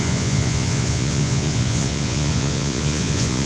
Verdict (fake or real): fake